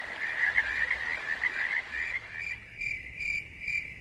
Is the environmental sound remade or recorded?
recorded